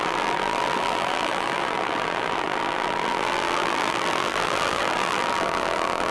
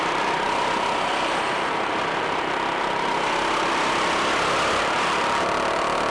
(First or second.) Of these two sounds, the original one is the second